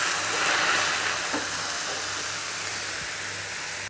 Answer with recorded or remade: recorded